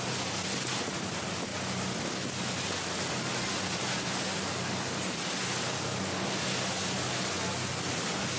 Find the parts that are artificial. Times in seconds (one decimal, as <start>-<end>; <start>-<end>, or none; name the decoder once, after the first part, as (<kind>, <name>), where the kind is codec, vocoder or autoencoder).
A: none